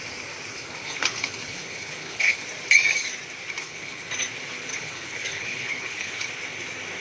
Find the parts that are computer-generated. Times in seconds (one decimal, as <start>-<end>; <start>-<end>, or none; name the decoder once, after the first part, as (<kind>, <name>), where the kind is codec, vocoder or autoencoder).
0.5-2.4 (codec, HILCodec); 3.6-4.1; 4.7-6.3